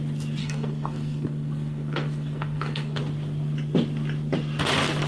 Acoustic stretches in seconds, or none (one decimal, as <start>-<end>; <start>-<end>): 0.0-0.4; 3.0-5.1